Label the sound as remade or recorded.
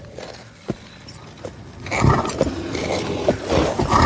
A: recorded